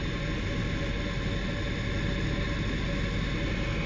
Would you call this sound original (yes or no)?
yes